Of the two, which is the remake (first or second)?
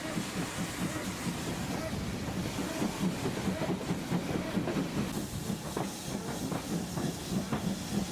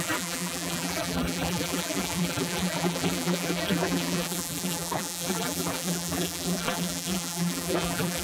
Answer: second